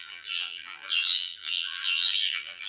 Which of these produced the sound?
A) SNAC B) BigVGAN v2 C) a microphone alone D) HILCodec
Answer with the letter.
B